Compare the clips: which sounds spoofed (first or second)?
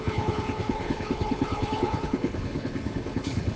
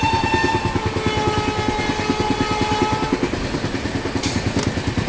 first